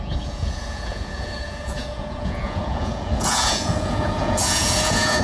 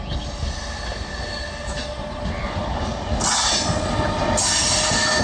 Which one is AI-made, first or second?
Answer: first